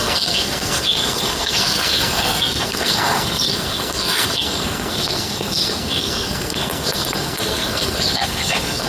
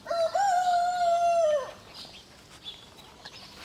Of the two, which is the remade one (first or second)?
first